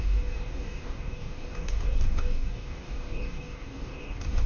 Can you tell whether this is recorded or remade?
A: remade